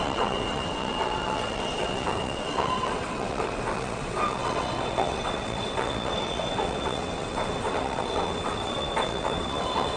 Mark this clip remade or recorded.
remade